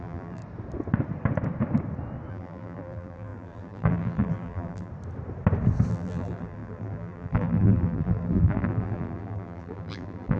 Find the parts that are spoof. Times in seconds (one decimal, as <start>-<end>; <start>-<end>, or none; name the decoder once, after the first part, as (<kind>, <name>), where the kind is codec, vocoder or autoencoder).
0.0-0.4 (vocoder, BigVGAN v2); 2.3-4.9; 5.9-10.4